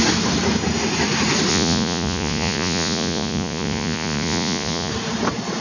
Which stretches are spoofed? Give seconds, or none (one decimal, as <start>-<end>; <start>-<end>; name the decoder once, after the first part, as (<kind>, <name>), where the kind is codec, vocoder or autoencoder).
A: 1.5-4.9 (vocoder, Vocos)